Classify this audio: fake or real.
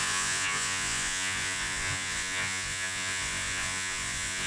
fake